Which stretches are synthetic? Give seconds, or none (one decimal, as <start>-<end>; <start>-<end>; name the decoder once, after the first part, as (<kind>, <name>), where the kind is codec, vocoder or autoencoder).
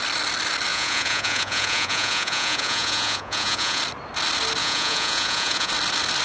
0.7-3.8 (vocoder, Vocos); 4.6-5.7